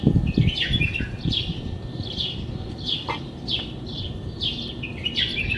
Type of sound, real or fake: real